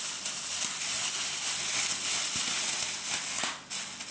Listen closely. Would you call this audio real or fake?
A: real